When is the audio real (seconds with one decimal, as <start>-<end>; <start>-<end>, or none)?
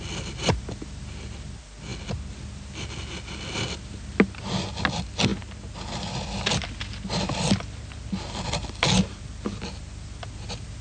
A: 0.0-10.8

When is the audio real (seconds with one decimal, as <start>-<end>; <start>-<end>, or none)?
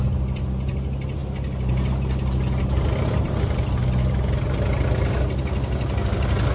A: 0.0-6.5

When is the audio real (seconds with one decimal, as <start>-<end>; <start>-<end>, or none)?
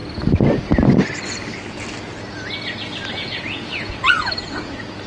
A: 0.0-3.1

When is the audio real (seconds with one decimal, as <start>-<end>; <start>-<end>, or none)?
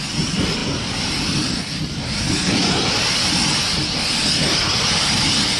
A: 0.0-5.6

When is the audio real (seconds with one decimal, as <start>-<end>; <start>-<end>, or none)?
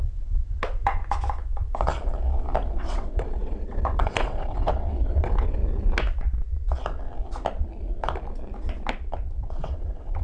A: 1.0-2.8; 5.6-9.4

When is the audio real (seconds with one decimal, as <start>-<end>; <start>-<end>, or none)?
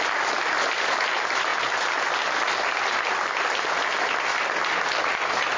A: 0.0-1.5; 2.1-5.6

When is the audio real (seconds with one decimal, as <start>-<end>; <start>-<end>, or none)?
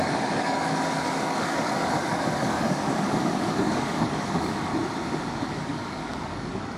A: 4.7-5.3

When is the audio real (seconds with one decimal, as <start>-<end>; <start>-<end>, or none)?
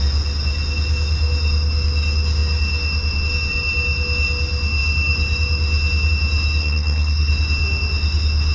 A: 0.0-6.6; 7.3-8.5